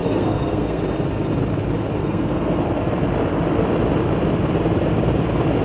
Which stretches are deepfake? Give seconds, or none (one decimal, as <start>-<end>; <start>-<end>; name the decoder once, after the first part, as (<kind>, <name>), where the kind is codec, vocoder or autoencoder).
0.0-0.8 (codec, SNAC); 2.0-2.6